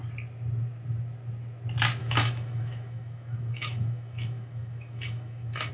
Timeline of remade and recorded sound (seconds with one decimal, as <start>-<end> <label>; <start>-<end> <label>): 0.0-2.0 recorded; 2.0-5.7 remade